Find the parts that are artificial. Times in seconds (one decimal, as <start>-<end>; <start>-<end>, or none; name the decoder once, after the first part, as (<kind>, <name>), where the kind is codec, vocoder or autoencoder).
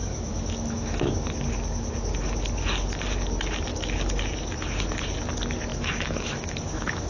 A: 0.0-1.1 (autoencoder, DAC-VAE); 3.7-4.2; 5.7-7.1